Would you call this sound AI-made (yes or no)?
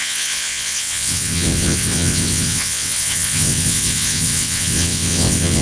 yes